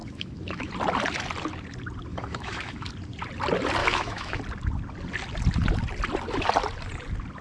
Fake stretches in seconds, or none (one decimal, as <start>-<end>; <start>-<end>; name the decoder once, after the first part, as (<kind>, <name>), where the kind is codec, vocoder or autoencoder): 0.0-0.7 (autoencoder, DAC-VAE); 2.1-2.9; 3.8-4.4